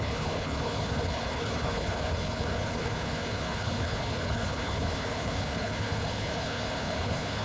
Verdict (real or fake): fake